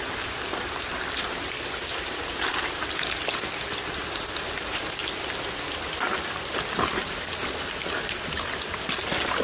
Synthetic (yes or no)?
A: no